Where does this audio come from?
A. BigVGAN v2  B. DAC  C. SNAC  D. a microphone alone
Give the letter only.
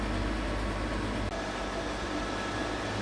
D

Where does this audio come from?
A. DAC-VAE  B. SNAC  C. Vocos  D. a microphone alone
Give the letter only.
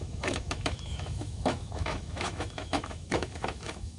A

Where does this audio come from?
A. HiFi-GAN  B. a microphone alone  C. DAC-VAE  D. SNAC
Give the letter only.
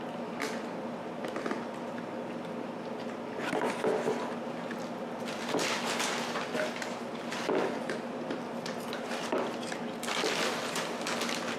B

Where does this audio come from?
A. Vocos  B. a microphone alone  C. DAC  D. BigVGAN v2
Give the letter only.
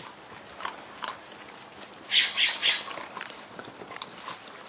B